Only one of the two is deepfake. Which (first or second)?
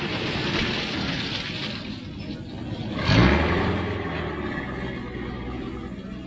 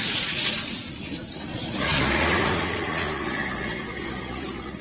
second